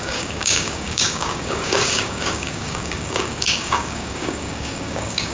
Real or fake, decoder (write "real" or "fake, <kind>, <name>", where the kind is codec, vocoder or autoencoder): fake, codec, DAC